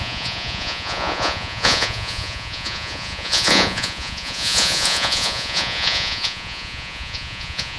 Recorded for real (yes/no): no